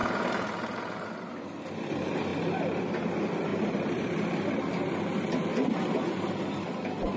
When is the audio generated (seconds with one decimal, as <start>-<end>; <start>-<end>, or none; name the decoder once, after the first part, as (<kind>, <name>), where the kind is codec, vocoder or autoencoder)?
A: 3.5-4.5 (vocoder, BigVGAN v2)